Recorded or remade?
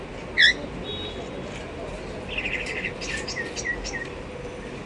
recorded